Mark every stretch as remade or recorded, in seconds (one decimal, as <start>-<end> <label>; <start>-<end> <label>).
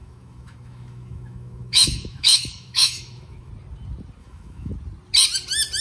0.0-3.5 remade; 3.5-4.2 recorded; 4.2-4.7 remade; 4.7-5.8 recorded